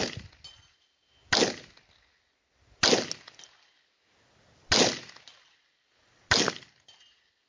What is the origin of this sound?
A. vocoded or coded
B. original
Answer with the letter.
B